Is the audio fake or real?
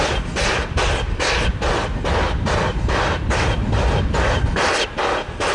real